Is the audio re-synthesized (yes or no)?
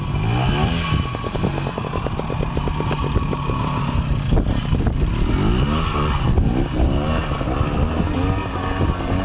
no